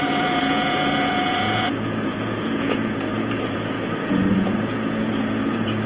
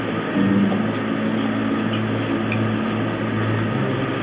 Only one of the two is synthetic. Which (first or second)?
first